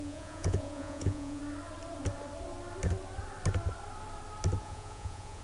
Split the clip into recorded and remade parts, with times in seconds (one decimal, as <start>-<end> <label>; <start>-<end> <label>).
0.0-1.4 remade; 1.4-4.6 recorded; 4.6-5.4 remade